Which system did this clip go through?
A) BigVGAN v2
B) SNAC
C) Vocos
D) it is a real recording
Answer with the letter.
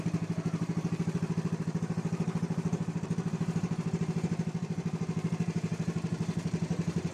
A